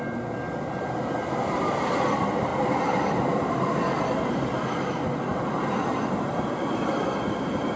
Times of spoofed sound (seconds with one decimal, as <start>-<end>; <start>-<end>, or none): none